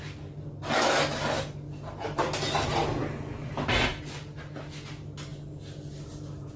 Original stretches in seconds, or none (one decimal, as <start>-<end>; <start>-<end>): 0.0-6.6